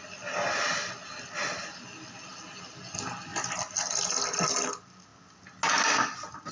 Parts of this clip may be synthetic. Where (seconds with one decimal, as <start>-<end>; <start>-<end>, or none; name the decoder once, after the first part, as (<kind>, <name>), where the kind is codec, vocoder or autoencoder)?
none